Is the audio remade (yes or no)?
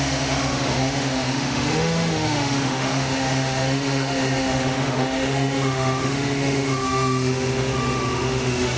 yes